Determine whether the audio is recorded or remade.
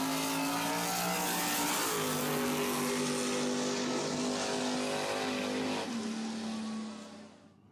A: recorded